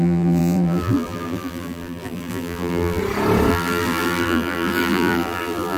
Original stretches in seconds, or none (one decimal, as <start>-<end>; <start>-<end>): 3.0-3.5